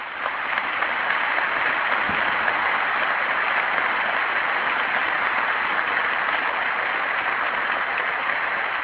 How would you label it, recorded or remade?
recorded